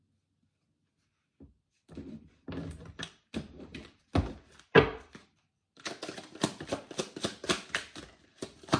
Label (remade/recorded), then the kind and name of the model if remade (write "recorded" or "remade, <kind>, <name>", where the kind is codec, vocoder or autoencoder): recorded